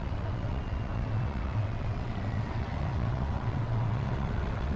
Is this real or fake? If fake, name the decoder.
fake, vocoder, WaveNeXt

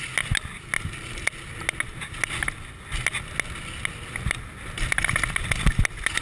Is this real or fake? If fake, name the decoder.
real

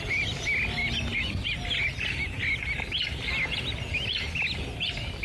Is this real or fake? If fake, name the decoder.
real